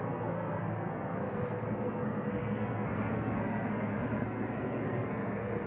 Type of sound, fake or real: fake